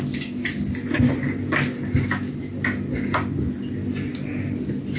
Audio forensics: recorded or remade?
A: recorded